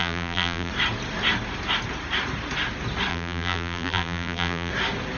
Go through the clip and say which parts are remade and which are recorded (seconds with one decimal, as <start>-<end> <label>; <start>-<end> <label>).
0.0-0.7 remade; 0.7-3.1 recorded; 3.1-4.7 remade; 4.7-5.2 recorded